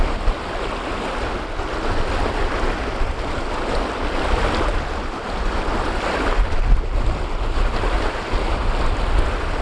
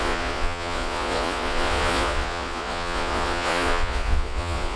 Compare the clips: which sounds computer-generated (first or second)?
second